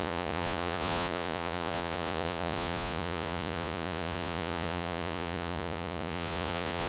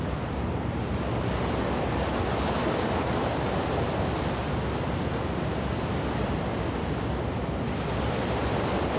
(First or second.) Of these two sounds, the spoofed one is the first